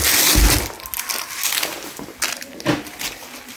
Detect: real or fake real